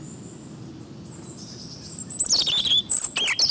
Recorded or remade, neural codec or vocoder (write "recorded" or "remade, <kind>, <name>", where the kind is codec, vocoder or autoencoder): recorded